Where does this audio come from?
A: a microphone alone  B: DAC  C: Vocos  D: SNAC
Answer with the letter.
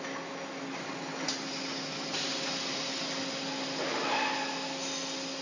A